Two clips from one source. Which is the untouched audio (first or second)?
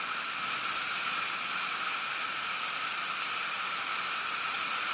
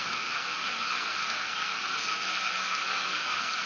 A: first